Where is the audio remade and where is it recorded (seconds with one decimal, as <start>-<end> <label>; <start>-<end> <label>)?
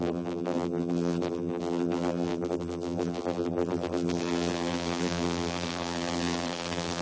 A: 0.0-7.0 remade